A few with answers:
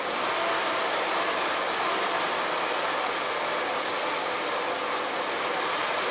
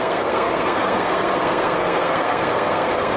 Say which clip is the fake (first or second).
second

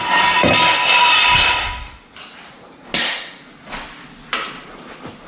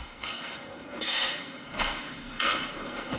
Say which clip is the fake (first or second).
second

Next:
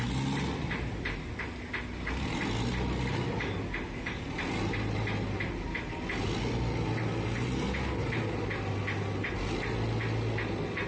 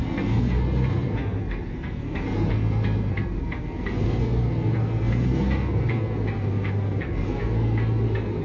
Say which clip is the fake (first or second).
second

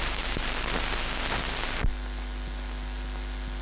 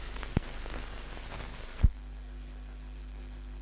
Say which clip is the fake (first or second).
second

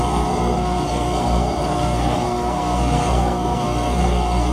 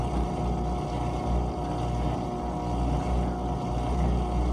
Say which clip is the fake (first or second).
first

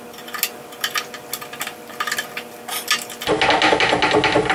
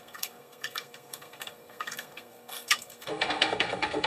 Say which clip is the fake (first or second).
second